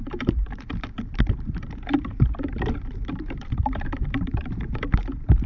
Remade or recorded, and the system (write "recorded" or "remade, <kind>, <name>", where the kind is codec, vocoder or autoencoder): remade, vocoder, BigVGAN v2